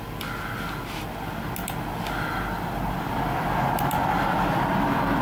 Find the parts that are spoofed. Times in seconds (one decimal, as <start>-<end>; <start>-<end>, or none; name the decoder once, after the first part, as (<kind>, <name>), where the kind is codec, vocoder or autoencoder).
none